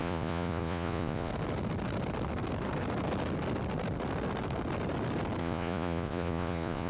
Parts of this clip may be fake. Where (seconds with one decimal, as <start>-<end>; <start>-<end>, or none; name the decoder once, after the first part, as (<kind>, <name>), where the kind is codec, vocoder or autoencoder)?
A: 0.0-1.3 (vocoder, Vocos); 5.4-6.9